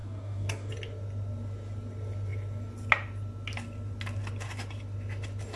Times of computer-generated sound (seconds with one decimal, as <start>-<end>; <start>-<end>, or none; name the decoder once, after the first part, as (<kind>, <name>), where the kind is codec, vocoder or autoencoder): 0.0-0.7 (codec, DAC)